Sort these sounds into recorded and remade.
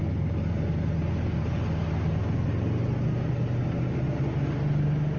recorded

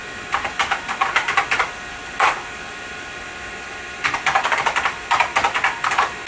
recorded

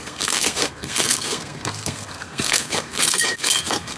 remade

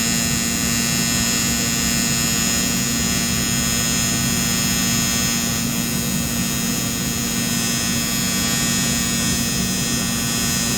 recorded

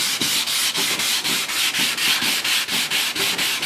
recorded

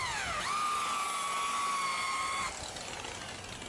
recorded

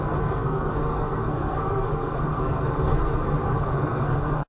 remade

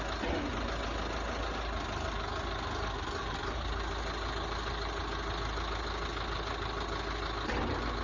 recorded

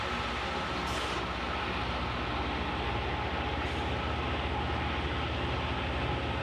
recorded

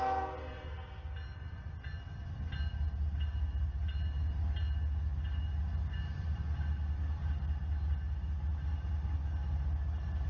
recorded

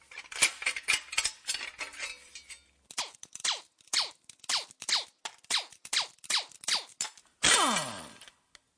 recorded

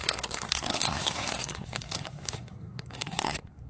remade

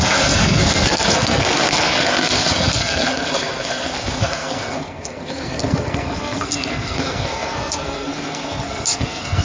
remade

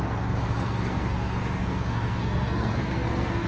remade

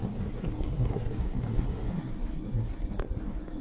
remade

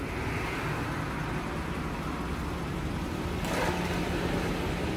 recorded